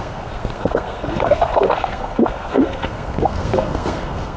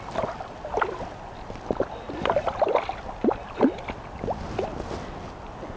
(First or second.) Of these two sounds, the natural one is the second